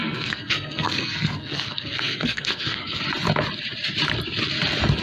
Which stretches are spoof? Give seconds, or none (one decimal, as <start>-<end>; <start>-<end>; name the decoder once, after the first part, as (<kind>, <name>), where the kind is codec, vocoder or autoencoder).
0.0-3.0 (codec, SNAC)